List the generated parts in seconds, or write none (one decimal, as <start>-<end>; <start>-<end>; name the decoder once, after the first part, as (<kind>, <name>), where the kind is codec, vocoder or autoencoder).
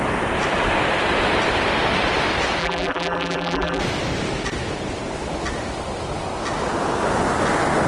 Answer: 2.6-3.8 (vocoder, BigVGAN v2)